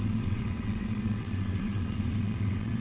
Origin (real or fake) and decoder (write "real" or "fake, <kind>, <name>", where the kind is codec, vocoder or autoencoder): fake, vocoder, WaveNeXt